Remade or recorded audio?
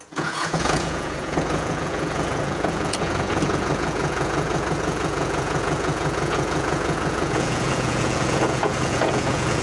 remade